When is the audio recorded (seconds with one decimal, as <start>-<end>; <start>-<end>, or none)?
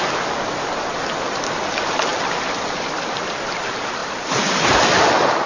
0.0-2.1; 3.6-4.0; 4.5-5.5